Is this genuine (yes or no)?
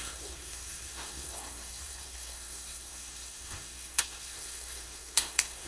no